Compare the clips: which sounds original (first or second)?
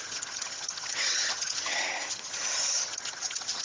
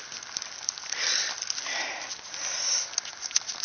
second